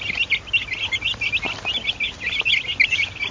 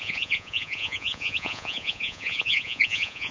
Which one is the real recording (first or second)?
first